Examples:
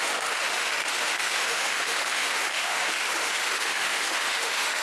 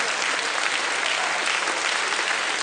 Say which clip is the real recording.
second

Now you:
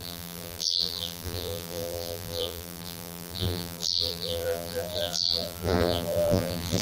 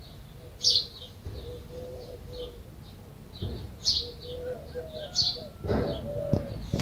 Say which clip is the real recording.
second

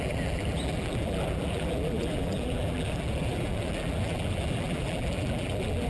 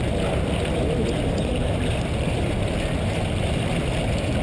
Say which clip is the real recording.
second